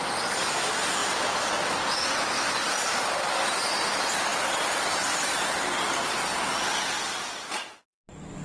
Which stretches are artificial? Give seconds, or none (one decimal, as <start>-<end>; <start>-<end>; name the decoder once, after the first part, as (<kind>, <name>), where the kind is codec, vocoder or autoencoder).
none

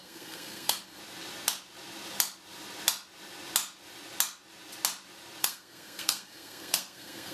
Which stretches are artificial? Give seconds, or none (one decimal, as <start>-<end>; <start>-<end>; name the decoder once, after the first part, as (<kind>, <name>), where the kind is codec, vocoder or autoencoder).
0.0-1.0 (codec, SNAC); 5.4-7.3

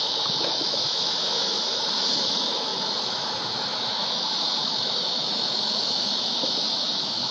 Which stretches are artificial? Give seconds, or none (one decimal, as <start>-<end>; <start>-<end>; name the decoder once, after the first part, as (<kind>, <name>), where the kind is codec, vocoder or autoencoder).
0.0-7.3 (autoencoder, DAC-VAE)

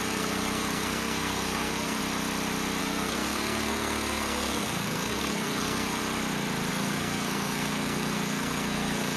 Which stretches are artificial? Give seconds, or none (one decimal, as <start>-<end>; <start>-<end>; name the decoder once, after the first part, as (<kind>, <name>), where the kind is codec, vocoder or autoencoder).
0.0-2.0 (codec, SNAC); 2.8-6.0; 6.7-9.2

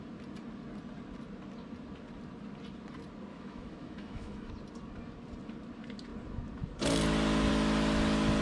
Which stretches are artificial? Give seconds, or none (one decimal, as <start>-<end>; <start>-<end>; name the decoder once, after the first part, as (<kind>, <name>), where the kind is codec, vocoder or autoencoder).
3.3-4.5 (autoencoder, DAC-VAE)

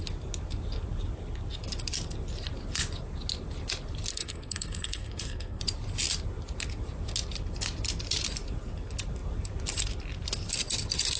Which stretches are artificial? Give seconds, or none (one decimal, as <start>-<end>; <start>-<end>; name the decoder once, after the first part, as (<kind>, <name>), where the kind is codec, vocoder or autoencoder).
4.1-5.6 (codec, SNAC)

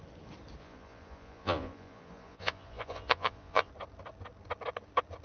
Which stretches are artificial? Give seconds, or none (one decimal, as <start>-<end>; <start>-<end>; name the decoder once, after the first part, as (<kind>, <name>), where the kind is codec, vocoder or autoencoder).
0.6-3.7 (vocoder, Vocos)

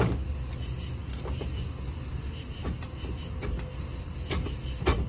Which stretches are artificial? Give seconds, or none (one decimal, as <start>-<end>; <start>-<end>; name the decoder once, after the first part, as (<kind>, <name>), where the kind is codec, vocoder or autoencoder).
none